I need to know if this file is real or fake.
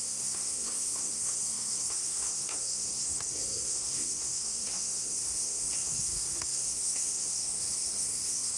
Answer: fake